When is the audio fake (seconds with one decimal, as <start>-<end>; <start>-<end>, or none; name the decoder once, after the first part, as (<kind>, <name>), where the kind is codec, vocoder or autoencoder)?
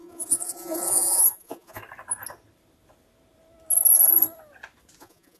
0.0-1.8 (vocoder, Vocos); 5.0-5.4